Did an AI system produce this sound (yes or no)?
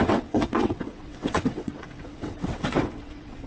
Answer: yes